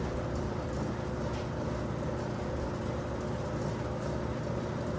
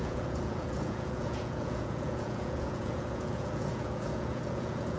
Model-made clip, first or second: second